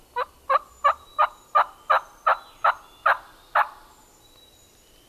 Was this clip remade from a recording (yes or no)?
no